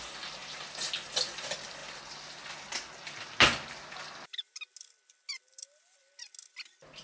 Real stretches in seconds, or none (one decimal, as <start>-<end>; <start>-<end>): 0.0-7.0